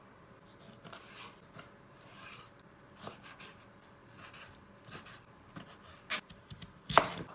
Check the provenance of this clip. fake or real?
real